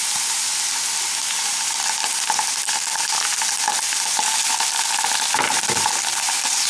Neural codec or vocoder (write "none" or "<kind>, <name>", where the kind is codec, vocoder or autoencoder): none